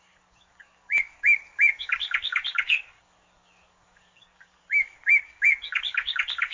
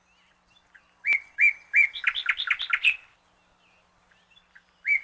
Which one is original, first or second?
second